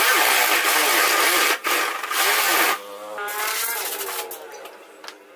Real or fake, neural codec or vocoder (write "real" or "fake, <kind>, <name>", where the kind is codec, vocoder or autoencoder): real